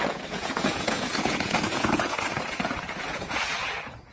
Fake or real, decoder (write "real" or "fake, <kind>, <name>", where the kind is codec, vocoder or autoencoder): fake, vocoder, Vocos